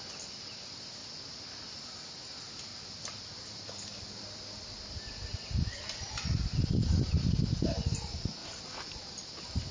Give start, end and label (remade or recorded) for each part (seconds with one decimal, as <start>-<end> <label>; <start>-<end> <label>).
0.0-2.7 recorded; 2.7-4.5 remade; 4.5-8.4 recorded; 8.4-9.2 remade; 9.2-9.7 recorded